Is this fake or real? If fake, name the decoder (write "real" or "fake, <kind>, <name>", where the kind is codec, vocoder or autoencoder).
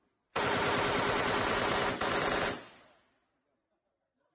real